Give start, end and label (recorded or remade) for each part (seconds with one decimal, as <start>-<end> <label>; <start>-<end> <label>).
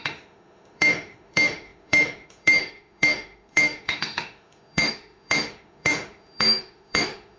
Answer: 0.0-7.4 remade